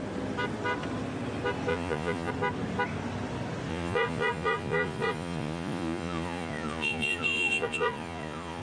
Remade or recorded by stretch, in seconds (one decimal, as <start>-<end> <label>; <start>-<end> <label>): 0.0-1.7 recorded; 1.7-2.3 remade; 2.3-3.7 recorded; 3.7-8.6 remade